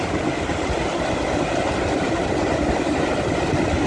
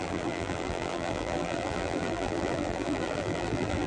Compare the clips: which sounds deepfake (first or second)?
second